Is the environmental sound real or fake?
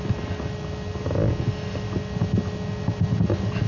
real